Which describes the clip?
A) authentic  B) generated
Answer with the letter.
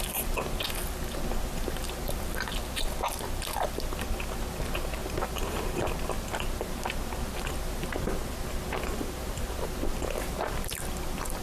A